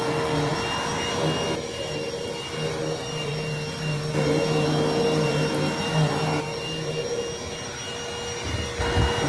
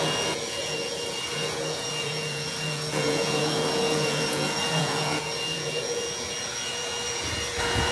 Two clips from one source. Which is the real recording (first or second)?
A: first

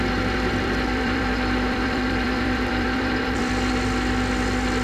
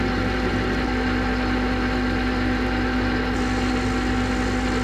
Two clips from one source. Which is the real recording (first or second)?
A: second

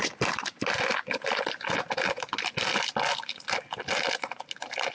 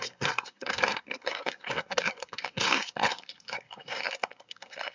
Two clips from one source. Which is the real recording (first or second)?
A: first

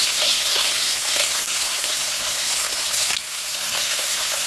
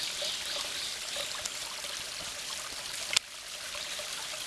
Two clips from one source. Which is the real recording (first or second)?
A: second